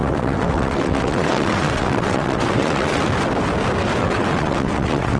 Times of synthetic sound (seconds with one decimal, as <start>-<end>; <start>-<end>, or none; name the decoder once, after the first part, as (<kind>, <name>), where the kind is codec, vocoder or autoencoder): 0.0-3.1 (vocoder, WaveNeXt); 4.0-5.2